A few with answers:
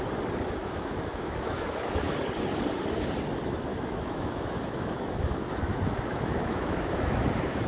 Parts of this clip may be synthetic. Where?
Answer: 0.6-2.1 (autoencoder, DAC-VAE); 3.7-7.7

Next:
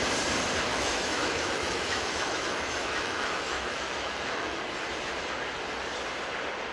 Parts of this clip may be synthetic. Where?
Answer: 0.7-4.6 (autoencoder, DAC-VAE)

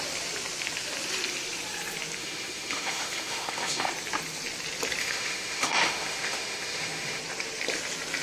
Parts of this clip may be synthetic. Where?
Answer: 2.2-3.9 (autoencoder, DAC-VAE); 5.0-7.2

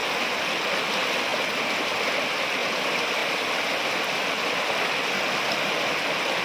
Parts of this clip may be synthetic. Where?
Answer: none

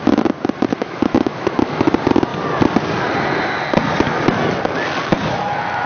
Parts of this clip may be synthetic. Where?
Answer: 0.7-1.9 (autoencoder, DAC-VAE)